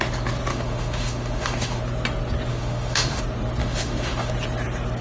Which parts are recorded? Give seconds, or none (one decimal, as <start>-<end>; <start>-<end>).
0.0-0.5; 1.8-2.5; 3.2-3.6; 4.3-5.0